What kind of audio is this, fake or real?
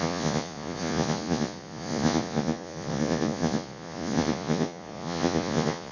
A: fake